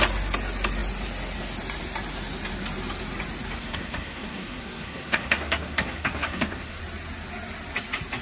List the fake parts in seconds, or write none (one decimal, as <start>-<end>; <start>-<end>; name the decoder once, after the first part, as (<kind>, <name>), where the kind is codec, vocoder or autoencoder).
3.6-6.8 (codec, SNAC)